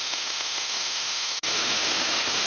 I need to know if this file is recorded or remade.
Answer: remade